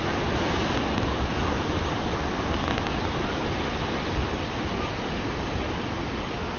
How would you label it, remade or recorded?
recorded